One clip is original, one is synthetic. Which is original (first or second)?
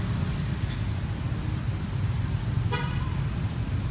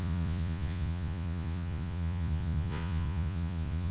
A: first